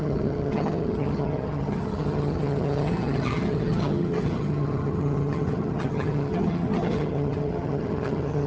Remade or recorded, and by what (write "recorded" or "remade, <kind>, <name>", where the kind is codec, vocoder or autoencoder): remade, vocoder, HiFi-GAN